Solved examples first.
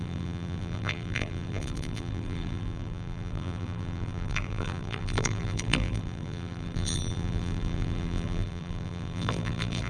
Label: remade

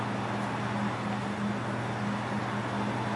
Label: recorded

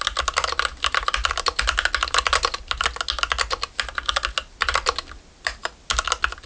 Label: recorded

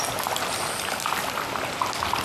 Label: recorded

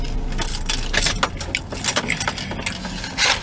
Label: recorded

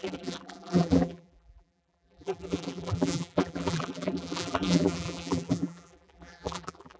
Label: remade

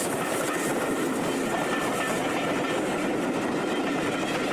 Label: recorded